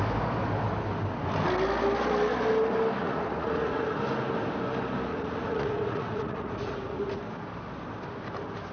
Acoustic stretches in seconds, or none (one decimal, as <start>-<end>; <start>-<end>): 0.0-3.0; 4.0-5.1; 7.2-8.7